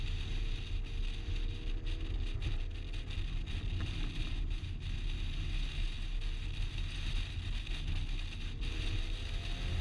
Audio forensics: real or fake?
real